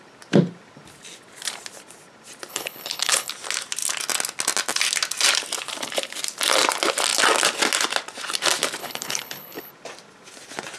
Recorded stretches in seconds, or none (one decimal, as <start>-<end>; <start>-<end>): 0.0-2.5; 3.3-8.8; 9.7-10.8

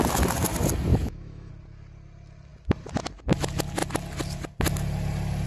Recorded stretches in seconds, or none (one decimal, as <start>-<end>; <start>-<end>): 0.0-0.9; 1.5-5.5